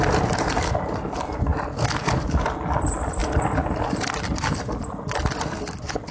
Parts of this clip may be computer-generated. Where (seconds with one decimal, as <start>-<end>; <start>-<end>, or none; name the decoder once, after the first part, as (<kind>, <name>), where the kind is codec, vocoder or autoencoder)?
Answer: 0.0-1.5 (vocoder, BigVGAN v2); 2.1-3.2; 3.8-6.1

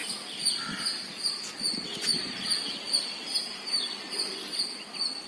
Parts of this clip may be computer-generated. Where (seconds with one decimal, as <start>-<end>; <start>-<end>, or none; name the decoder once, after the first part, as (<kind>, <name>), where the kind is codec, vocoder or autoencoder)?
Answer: 2.1-5.3 (vocoder, BigVGAN v2)

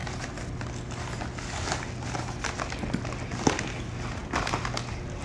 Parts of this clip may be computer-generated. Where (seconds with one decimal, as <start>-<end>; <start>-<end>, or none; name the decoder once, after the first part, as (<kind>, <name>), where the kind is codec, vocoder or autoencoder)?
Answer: none

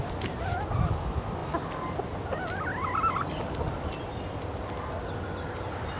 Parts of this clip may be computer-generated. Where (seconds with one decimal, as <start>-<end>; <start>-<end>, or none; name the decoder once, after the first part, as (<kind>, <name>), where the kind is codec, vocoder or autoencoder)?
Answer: none

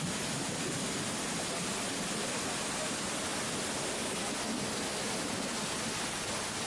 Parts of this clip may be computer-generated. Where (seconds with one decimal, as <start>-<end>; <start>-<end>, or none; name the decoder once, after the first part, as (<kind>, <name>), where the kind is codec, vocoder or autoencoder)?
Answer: none

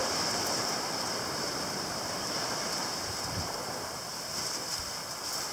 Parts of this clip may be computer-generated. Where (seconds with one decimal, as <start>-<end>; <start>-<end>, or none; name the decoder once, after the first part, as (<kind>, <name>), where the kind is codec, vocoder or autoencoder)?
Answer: 0.0-5.5 (vocoder, BigVGAN v2)